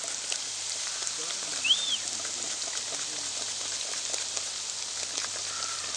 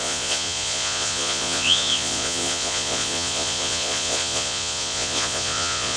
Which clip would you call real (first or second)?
first